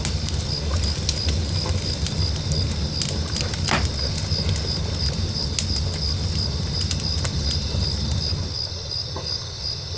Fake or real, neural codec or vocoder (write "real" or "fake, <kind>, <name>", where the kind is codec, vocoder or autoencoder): real